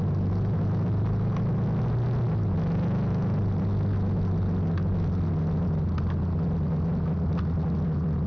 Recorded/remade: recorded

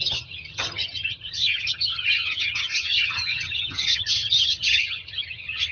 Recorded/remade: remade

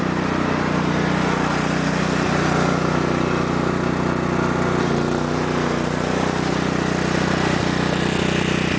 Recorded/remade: recorded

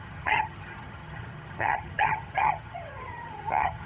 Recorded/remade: remade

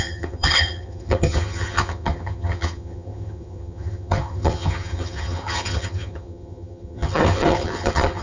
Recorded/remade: remade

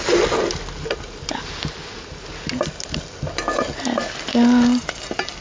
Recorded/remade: recorded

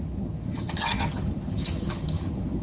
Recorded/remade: remade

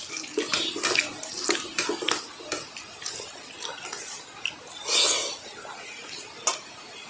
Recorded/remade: recorded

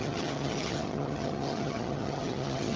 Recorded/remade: remade